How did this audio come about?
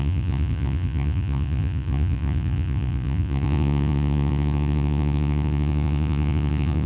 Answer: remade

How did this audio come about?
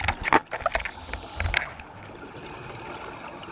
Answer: recorded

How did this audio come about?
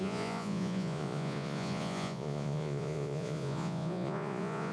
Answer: remade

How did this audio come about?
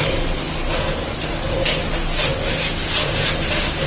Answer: recorded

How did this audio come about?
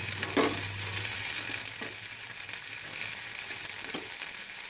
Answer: recorded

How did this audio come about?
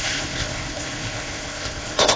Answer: remade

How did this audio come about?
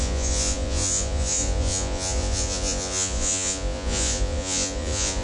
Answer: remade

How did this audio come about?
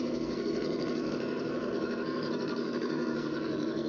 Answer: remade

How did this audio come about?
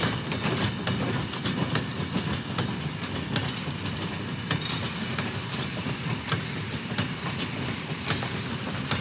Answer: recorded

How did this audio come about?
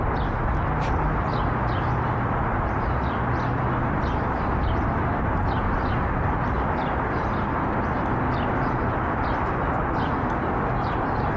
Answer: recorded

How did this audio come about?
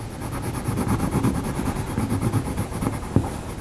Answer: recorded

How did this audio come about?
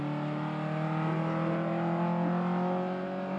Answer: recorded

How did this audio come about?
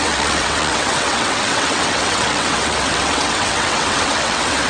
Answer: remade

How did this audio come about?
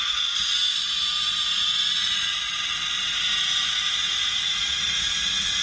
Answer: recorded